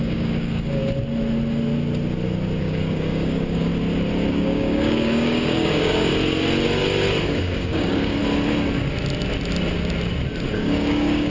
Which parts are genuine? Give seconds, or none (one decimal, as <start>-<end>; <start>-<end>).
0.8-2.6; 3.7-4.3; 6.1-7.4; 8.2-10.5

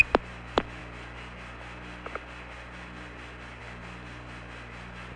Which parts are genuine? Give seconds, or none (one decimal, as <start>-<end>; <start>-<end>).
0.0-5.2

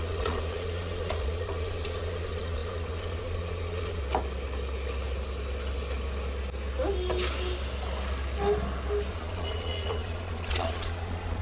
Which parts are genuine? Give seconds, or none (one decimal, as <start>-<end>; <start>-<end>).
4.0-9.1